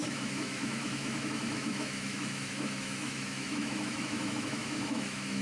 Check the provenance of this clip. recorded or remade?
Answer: remade